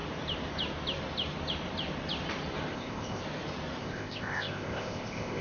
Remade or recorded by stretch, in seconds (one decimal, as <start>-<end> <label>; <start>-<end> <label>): 0.0-2.7 recorded; 2.7-3.2 remade; 3.2-3.8 recorded; 3.8-5.4 remade